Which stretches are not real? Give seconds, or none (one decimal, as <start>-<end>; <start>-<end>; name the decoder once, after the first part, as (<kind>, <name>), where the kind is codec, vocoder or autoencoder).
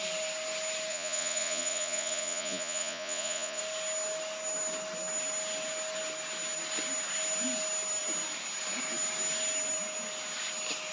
0.9-3.6 (vocoder, Vocos)